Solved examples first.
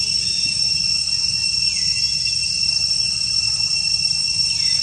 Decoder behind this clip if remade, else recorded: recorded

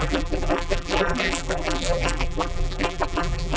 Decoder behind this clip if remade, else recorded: remade, vocoder, BigVGAN v2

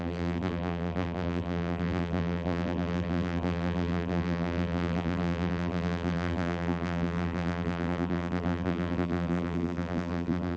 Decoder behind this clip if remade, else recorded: remade, vocoder, BigVGAN v2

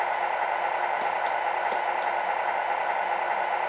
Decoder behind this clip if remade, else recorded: recorded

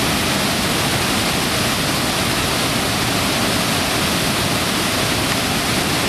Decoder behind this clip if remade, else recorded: recorded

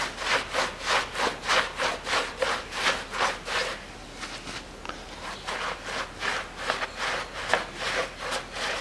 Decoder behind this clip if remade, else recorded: recorded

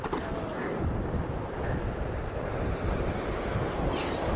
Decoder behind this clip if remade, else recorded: recorded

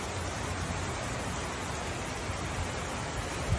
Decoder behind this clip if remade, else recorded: recorded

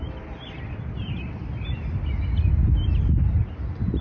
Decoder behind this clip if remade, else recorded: recorded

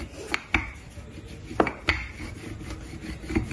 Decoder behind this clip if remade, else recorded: recorded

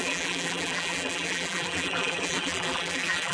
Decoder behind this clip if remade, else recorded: remade, vocoder, BigVGAN v2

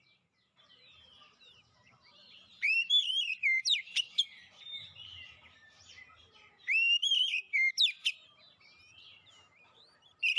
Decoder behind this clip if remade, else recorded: remade, vocoder, BigVGAN v2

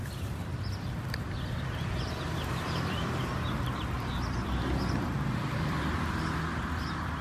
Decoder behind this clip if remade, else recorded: remade, vocoder, BigVGAN v2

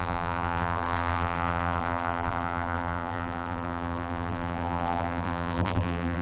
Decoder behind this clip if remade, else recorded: remade, vocoder, BigVGAN v2